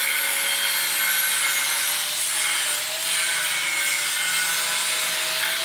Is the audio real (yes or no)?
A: yes